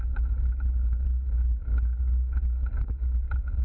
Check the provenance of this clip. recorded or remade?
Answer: recorded